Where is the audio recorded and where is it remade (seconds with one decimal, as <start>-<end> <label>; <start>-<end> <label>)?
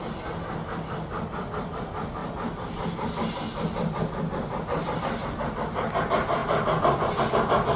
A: 0.0-7.8 recorded